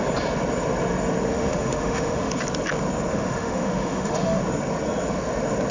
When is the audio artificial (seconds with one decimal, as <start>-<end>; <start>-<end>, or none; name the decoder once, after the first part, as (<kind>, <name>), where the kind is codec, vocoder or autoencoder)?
1.3-2.3 (autoencoder, DAC-VAE); 3.1-4.4